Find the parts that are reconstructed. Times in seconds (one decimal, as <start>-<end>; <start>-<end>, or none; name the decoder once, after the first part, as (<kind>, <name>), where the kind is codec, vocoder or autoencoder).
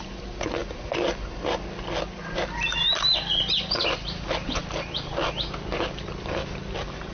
none